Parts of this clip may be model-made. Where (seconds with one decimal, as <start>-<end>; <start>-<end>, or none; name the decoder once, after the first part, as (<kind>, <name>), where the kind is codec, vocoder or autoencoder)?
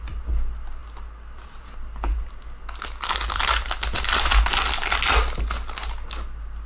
none